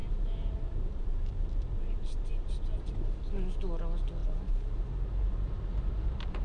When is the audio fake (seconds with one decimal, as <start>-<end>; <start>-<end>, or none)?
0.0-2.4; 4.2-6.4